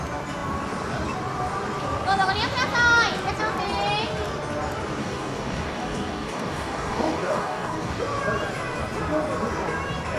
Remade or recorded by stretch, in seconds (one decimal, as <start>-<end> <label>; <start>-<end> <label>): 0.0-5.0 recorded; 5.0-8.0 remade; 8.0-10.2 recorded